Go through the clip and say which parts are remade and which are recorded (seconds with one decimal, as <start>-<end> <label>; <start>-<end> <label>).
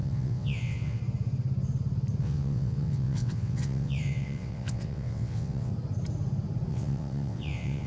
0.0-1.0 remade; 1.0-2.2 recorded; 2.2-5.7 remade; 5.7-6.7 recorded; 6.7-7.9 remade